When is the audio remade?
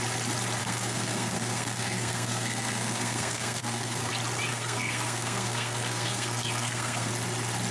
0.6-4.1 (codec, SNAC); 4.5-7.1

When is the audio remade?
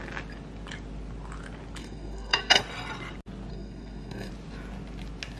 1.8-2.6 (codec, SNAC); 3.5-4.3